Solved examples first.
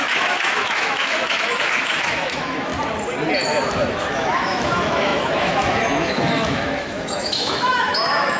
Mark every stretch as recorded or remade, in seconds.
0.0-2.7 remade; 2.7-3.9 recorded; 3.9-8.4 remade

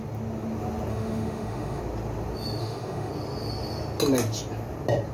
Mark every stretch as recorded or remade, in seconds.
0.0-0.9 recorded; 0.9-1.8 remade; 1.8-2.6 recorded; 2.6-3.1 remade; 3.1-5.1 recorded

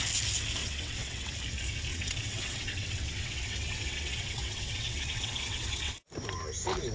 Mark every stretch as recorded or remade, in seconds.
0.0-0.6 recorded; 0.6-1.3 remade; 1.3-1.9 recorded; 1.9-6.0 remade; 6.0-6.9 recorded